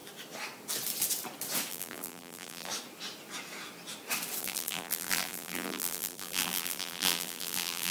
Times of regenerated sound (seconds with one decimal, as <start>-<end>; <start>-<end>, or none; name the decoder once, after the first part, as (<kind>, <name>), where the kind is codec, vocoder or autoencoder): 1.7-2.7 (vocoder, BigVGAN v2); 4.4-7.9